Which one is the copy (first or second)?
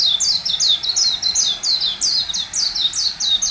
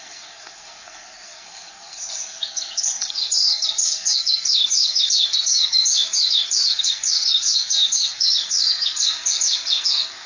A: second